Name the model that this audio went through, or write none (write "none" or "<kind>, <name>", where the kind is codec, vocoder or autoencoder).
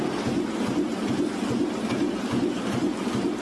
none